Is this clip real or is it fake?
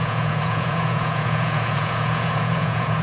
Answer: fake